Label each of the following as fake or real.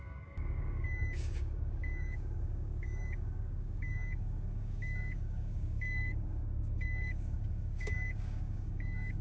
fake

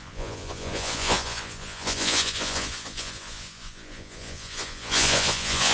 fake